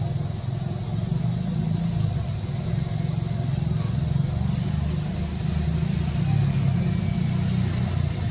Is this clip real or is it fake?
real